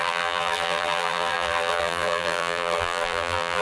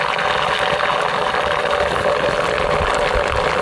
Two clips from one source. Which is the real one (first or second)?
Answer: second